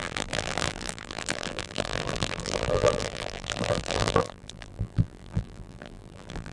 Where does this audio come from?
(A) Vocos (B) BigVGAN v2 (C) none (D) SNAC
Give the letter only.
B